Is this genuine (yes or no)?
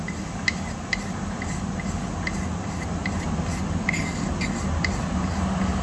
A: yes